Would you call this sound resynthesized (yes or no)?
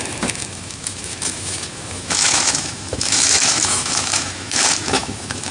yes